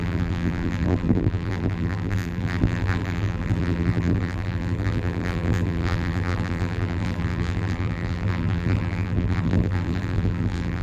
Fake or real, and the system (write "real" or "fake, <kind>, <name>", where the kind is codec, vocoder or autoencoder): fake, vocoder, BigVGAN v2